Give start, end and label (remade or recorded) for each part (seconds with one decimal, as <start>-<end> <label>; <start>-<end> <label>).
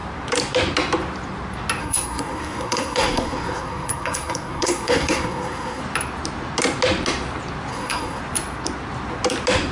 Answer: 0.0-1.8 recorded; 1.8-5.8 remade; 5.8-7.7 recorded; 7.7-8.2 remade; 8.2-9.7 recorded